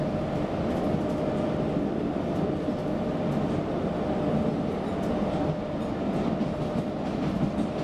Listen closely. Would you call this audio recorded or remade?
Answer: recorded